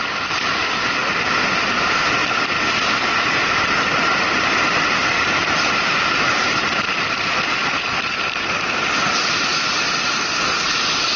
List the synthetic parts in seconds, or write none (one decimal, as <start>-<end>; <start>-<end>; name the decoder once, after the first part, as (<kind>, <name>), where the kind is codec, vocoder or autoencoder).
0.0-1.0 (vocoder, BigVGAN v2); 1.6-2.2; 3.2-9.5; 10.7-11.2